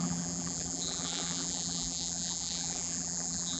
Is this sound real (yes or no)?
no